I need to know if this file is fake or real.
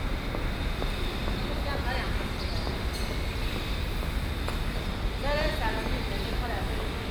real